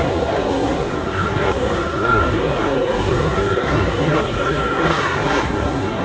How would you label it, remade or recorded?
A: remade